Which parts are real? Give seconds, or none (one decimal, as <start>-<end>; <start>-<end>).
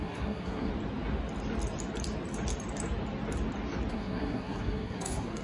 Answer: 0.7-3.9